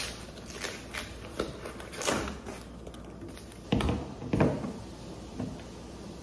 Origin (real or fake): real